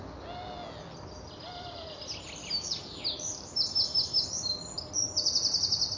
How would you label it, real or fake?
real